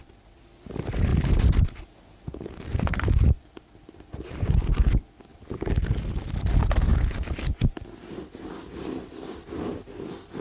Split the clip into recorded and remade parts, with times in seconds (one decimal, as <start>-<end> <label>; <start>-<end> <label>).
0.0-5.3 recorded; 5.3-5.9 remade; 5.9-10.4 recorded